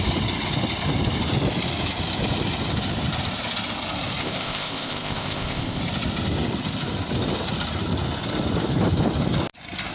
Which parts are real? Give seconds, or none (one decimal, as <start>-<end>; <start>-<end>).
0.0-4.2; 5.8-9.9